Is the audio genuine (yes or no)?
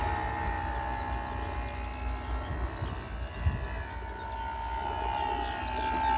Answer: yes